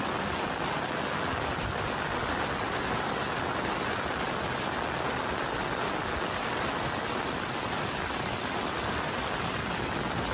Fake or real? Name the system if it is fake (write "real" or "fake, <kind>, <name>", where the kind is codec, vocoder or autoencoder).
real